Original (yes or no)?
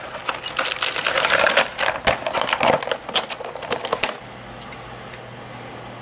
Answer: yes